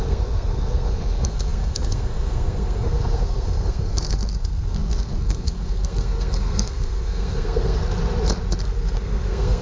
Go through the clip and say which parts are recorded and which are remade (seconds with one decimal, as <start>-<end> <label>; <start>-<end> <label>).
0.0-7.8 remade; 7.8-8.6 recorded; 8.6-9.6 remade

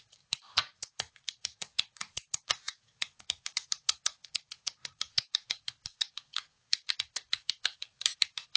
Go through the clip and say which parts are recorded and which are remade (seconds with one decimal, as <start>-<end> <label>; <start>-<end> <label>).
0.0-8.6 remade

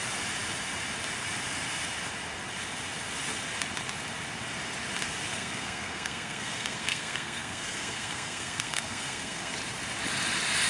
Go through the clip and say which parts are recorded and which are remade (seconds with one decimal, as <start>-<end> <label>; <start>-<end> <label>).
0.0-5.3 recorded; 5.3-9.5 remade; 9.5-10.7 recorded